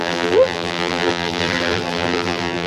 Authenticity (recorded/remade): remade